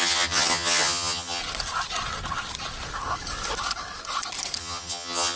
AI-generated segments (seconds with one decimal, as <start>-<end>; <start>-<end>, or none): 0.0-1.4; 4.6-5.4